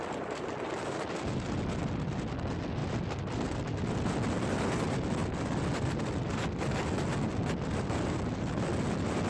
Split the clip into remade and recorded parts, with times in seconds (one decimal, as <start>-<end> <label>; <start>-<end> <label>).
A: 0.0-9.3 recorded